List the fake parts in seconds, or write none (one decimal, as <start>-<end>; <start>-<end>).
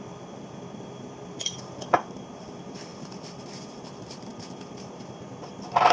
2.9-3.4; 4.3-5.5